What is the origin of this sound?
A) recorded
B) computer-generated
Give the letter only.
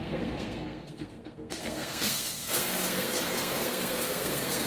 B